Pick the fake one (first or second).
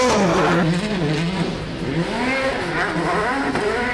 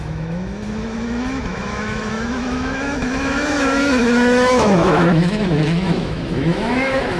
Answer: second